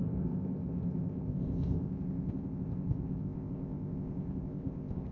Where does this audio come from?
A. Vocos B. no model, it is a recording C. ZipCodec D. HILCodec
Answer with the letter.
C